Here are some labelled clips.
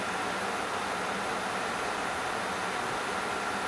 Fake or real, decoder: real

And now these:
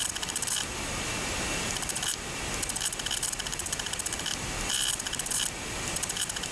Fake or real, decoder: real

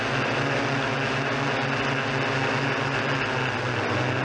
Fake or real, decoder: real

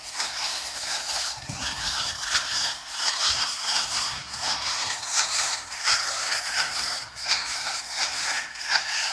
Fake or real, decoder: fake, codec, SNAC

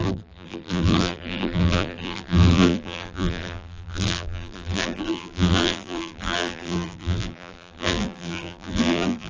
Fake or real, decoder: fake, vocoder, BigVGAN v2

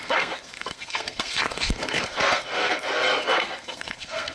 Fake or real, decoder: fake, codec, SNAC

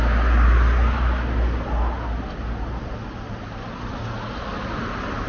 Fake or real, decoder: real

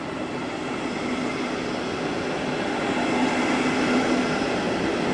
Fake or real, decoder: real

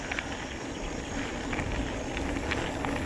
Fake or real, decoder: real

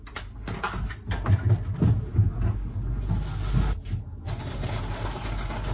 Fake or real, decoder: real